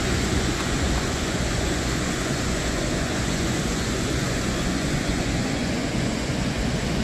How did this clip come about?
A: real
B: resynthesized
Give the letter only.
B